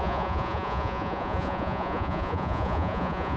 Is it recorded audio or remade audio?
remade